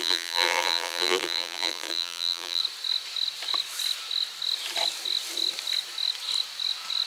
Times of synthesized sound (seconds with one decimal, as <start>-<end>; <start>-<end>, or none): 0.0-2.6